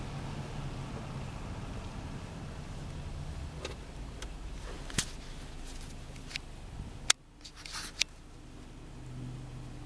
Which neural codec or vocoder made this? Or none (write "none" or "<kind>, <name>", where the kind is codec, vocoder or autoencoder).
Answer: none